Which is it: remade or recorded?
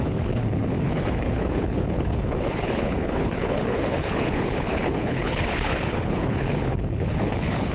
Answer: remade